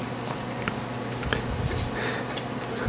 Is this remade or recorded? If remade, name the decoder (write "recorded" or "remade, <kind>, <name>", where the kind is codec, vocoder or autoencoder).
recorded